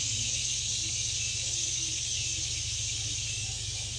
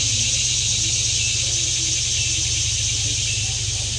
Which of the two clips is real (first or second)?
second